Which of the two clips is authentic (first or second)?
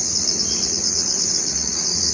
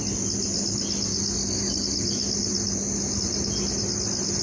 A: second